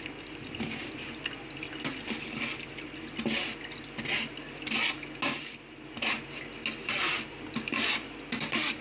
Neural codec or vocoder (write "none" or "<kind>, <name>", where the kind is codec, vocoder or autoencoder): none